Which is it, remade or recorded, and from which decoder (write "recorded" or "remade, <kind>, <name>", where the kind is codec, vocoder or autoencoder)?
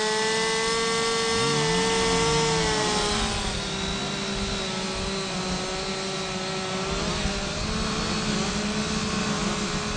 recorded